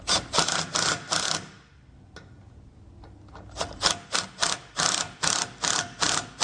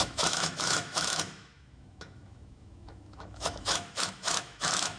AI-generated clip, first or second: second